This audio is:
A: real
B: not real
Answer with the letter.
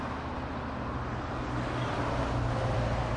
A